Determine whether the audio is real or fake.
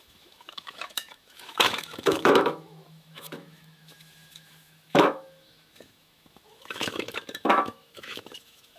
fake